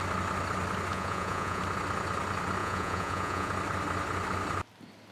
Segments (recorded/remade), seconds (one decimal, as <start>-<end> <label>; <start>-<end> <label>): 0.0-0.9 recorded; 0.9-1.6 remade; 1.6-2.6 recorded; 2.6-3.5 remade; 3.5-5.1 recorded